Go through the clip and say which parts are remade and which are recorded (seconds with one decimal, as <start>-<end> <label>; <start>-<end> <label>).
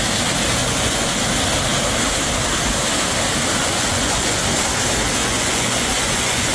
0.0-0.6 recorded; 0.6-1.1 remade; 1.1-3.6 recorded; 3.6-4.4 remade; 4.4-5.2 recorded; 5.2-6.5 remade